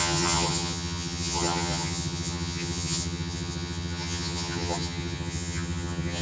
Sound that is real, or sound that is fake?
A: fake